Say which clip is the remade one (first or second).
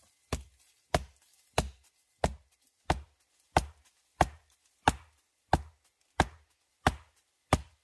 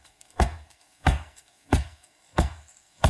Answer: second